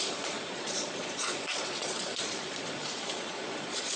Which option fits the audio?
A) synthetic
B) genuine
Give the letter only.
A